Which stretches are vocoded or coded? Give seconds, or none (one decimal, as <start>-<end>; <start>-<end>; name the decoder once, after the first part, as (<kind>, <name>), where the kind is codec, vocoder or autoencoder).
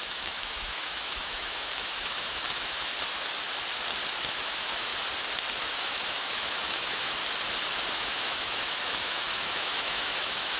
0.0-2.9 (autoencoder, DAC-VAE); 4.2-4.9; 5.8-7.2; 7.9-10.6